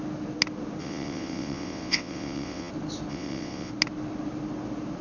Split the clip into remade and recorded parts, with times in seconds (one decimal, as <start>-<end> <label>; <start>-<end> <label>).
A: 0.0-0.8 recorded; 0.8-2.7 remade; 2.7-3.1 recorded; 3.1-3.7 remade; 3.7-5.0 recorded